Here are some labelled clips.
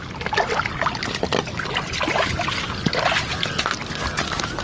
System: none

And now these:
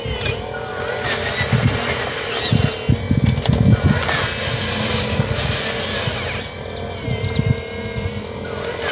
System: none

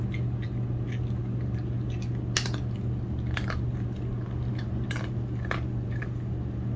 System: none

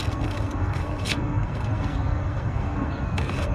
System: codec, SNAC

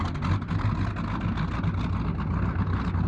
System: none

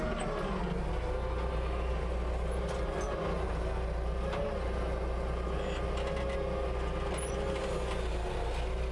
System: none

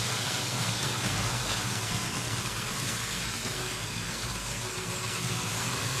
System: codec, SNAC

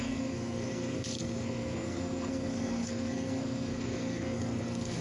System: codec, SNAC